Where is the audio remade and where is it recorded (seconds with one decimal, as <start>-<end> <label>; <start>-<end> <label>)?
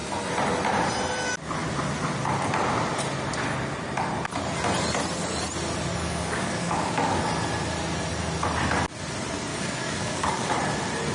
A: 0.0-5.9 recorded; 5.9-7.2 remade; 7.2-9.5 recorded; 9.5-10.5 remade; 10.5-11.1 recorded